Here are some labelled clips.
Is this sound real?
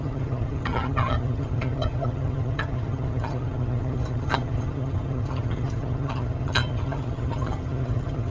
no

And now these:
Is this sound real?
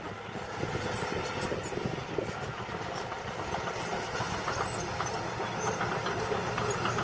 yes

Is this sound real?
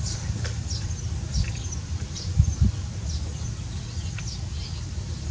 yes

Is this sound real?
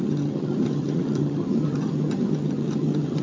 no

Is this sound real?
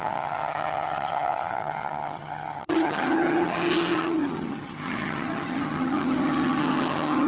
no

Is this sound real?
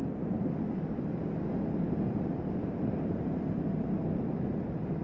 yes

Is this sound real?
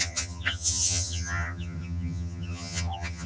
no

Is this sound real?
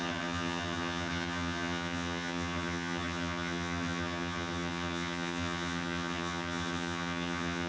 no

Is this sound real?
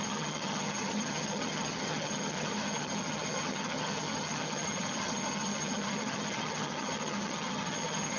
no